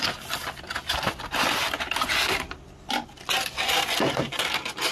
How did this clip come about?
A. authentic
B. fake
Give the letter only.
A